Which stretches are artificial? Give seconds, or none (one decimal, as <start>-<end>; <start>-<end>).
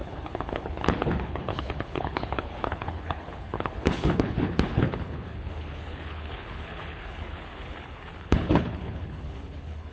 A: 0.0-9.9